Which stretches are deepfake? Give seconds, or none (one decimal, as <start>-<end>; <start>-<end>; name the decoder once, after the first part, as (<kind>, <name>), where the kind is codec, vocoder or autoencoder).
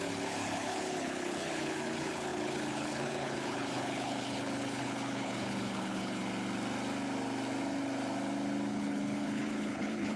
0.0-6.2 (codec, HILCodec); 8.7-10.2